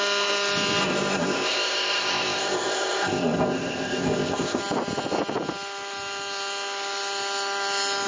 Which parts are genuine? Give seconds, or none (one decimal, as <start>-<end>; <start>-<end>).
0.0-0.8; 4.6-8.1

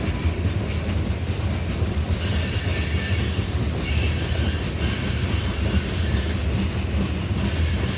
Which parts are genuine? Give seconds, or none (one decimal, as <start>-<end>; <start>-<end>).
0.0-8.0

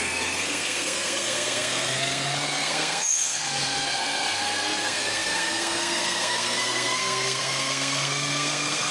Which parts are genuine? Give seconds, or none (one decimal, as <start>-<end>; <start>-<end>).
none

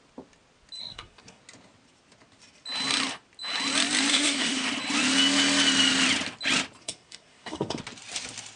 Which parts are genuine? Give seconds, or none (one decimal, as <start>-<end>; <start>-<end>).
0.0-0.8; 1.4-4.1; 4.7-6.8; 7.8-8.6

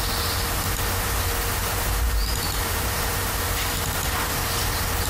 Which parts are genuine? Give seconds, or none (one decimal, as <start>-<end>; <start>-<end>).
0.0-1.6; 4.5-5.1